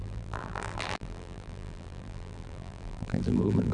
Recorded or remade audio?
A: remade